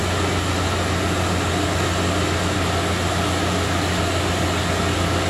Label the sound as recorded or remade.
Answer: recorded